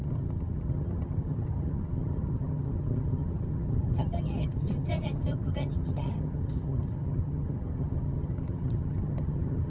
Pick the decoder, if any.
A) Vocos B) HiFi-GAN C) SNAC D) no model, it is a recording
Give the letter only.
B